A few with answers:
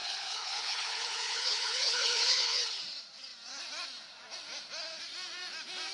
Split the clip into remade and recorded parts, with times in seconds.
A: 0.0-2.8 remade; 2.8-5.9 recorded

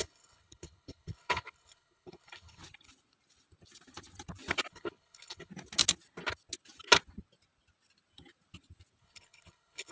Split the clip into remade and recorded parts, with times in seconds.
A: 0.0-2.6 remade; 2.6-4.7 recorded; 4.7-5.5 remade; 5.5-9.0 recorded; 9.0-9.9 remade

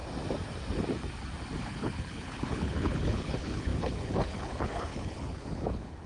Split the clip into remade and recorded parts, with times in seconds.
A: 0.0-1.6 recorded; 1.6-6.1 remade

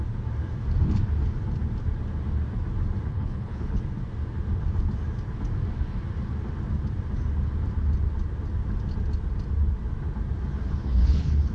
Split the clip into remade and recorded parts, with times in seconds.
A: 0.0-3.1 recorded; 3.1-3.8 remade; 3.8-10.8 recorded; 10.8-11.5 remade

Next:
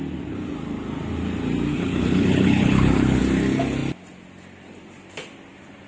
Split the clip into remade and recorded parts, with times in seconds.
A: 0.0-1.7 recorded; 1.7-3.2 remade; 3.2-5.9 recorded

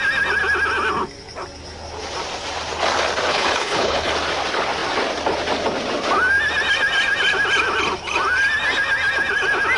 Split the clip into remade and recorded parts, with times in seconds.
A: 0.0-3.3 recorded; 3.3-4.1 remade; 4.1-9.8 recorded

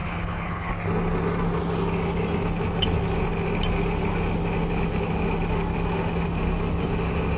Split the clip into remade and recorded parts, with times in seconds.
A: 0.0-0.7 remade; 0.7-7.4 recorded

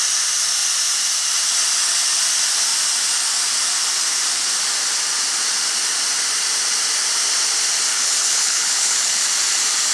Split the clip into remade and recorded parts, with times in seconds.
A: 0.0-7.9 recorded; 7.9-9.2 remade; 9.2-9.9 recorded